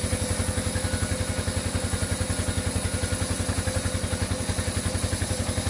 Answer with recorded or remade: recorded